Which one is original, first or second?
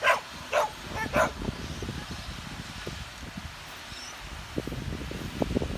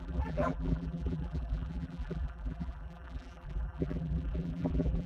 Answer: first